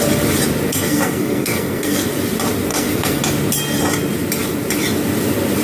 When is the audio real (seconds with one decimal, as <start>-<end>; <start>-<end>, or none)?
0.0-0.7; 2.1-2.7; 3.2-5.6